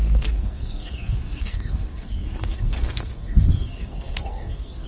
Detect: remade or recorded remade